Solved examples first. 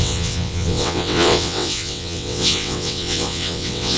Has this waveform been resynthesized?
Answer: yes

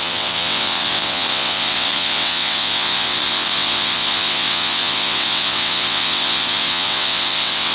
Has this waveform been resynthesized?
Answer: yes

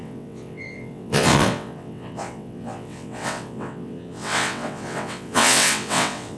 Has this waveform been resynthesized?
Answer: yes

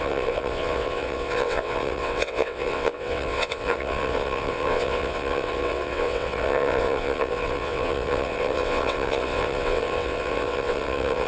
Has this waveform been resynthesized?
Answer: yes